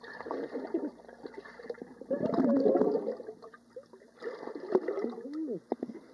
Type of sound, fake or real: real